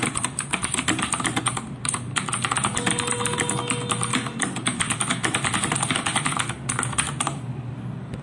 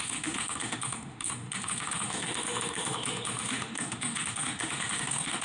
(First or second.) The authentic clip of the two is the first